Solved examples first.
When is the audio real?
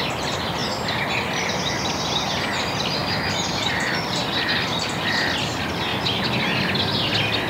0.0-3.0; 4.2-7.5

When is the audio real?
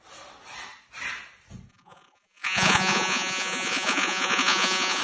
0.0-1.7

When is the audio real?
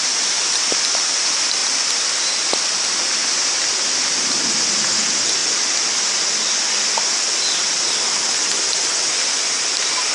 0.0-1.6; 3.1-5.4; 8.2-10.1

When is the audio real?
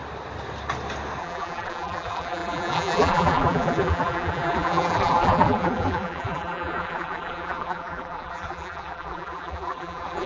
0.0-1.2